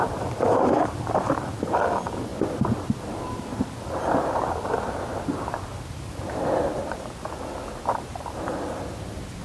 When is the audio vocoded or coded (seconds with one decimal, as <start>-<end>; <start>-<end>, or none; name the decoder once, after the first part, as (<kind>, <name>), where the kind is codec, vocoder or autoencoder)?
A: 5.1-7.2 (vocoder, BigVGAN v2)